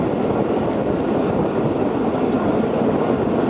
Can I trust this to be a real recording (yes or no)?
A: yes